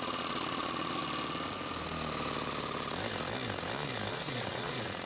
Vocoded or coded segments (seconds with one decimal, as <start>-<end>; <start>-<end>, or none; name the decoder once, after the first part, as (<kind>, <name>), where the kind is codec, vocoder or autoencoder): 0.0-1.0 (vocoder, Vocos); 4.1-5.1